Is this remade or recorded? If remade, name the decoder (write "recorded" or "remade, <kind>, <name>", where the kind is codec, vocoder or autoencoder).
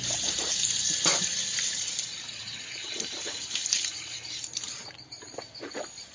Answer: remade, vocoder, BigVGAN v2